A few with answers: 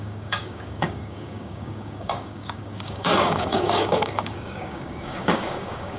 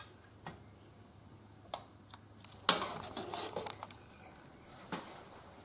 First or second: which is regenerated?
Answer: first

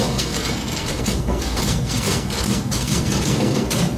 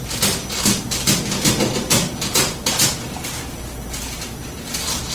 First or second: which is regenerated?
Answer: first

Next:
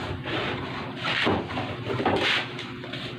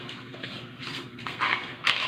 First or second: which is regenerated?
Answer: second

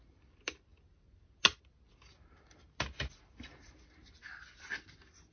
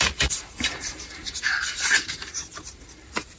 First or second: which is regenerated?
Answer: second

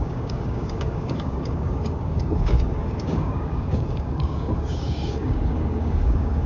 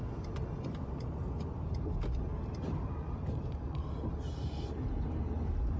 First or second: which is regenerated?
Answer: first